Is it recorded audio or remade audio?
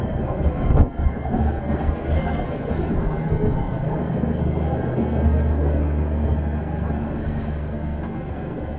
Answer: remade